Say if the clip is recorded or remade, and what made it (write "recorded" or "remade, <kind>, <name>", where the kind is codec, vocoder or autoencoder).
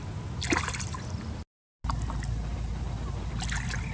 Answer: recorded